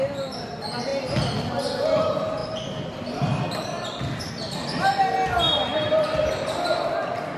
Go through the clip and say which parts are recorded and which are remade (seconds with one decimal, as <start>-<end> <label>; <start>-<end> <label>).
0.0-7.4 recorded